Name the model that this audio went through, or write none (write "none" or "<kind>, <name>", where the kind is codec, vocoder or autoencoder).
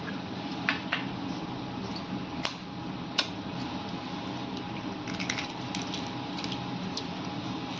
none